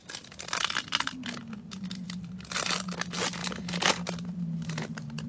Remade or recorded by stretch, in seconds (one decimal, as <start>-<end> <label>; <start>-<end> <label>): 0.0-5.3 recorded